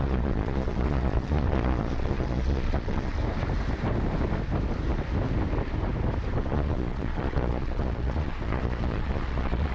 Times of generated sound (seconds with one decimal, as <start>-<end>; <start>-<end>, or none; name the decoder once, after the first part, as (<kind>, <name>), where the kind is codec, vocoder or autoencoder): 0.0-3.2 (vocoder, Vocos); 6.4-9.7